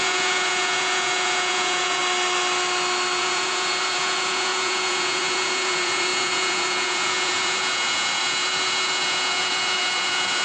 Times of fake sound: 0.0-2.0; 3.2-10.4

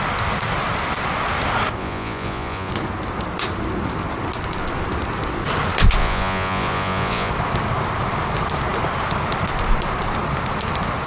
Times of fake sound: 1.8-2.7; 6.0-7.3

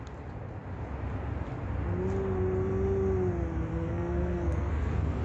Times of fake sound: 3.7-5.2